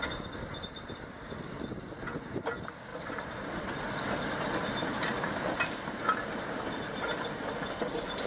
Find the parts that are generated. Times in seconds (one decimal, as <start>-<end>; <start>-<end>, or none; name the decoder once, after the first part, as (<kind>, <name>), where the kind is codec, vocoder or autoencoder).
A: 2.9-3.6 (vocoder, BigVGAN v2); 4.6-6.1